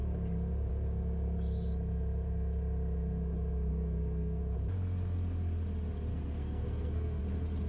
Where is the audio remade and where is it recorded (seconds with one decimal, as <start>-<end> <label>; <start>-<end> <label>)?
0.0-3.7 recorded; 3.7-4.4 remade; 4.4-6.1 recorded; 6.1-7.2 remade; 7.2-7.7 recorded